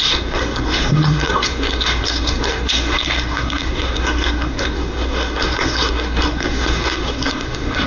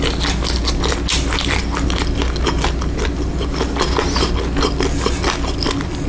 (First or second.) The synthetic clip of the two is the first